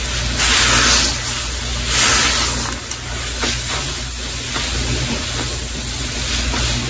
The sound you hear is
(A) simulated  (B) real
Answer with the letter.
B